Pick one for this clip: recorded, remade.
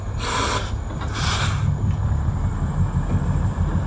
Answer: recorded